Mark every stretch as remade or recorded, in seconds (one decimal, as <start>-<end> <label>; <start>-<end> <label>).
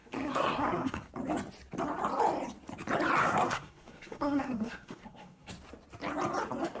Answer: 0.0-1.1 remade; 1.1-3.2 recorded; 3.2-5.5 remade; 5.5-6.8 recorded